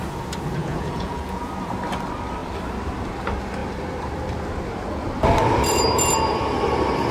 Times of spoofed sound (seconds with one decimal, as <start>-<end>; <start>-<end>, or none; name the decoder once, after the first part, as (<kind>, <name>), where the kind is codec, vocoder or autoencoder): 0.6-1.5 (vocoder, Vocos)

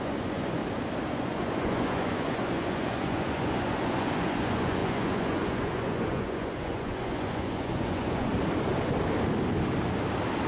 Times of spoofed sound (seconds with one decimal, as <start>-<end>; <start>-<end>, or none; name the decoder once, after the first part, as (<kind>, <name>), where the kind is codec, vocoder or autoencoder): 0.0-0.6 (vocoder, Vocos); 1.1-8.3

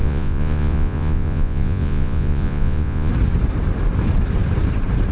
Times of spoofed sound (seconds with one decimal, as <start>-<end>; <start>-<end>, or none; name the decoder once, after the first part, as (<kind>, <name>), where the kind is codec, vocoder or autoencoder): 0.0-3.1 (vocoder, Vocos)